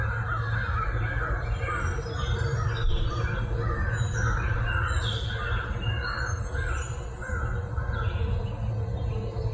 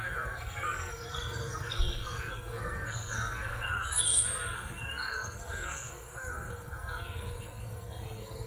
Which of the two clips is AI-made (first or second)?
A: second